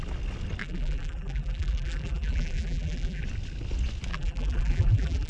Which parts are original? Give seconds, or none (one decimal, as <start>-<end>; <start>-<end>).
0.0-0.6; 3.2-4.1